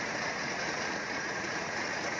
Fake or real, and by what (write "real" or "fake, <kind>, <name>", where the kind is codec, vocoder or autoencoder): fake, vocoder, Vocos